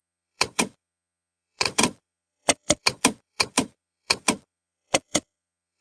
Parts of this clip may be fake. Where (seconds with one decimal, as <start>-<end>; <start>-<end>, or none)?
0.0-5.8

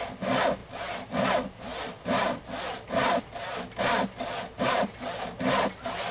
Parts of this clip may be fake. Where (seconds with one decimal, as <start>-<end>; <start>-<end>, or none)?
none

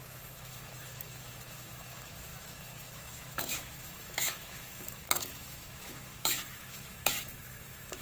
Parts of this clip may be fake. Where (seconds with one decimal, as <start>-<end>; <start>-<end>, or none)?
0.0-8.0

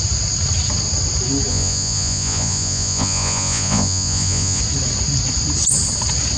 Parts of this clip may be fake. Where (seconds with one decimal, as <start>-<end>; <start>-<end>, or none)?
1.5-4.6

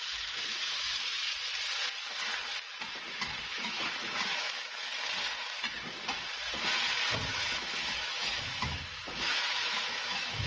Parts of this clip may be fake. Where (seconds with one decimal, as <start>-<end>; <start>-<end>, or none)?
0.0-1.3; 3.5-4.9; 7.3-10.5

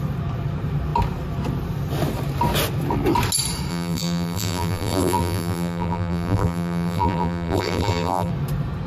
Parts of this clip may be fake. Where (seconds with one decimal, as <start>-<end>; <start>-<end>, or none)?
3.7-8.3